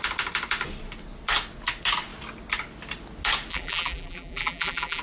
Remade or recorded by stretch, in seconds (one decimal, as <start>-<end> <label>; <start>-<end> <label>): 0.0-3.5 recorded; 3.5-5.0 remade